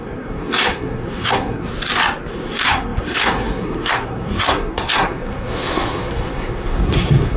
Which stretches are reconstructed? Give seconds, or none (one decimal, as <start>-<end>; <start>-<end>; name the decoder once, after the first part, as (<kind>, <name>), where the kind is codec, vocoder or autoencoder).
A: 0.0-1.7 (codec, SNAC); 2.3-7.4